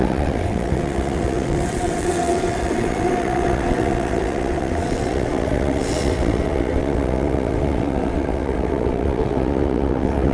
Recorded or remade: remade